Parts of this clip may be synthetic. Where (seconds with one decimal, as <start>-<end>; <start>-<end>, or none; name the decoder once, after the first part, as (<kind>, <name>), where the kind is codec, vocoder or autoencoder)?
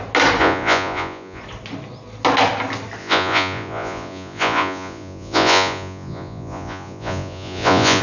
0.4-1.4 (vocoder, Vocos); 3.0-8.0